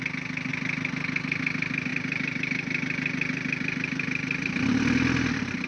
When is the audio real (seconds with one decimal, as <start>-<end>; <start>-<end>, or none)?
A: 0.0-5.7